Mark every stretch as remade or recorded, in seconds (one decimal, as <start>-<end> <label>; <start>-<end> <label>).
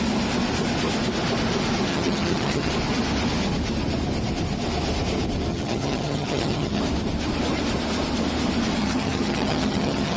0.0-1.9 recorded; 1.9-2.7 remade; 2.7-5.5 recorded; 5.5-6.8 remade; 6.8-8.8 recorded; 8.8-10.2 remade